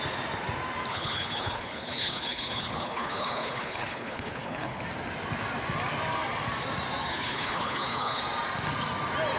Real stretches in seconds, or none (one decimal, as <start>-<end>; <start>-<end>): 0.0-0.9; 4.8-7.1; 8.2-9.4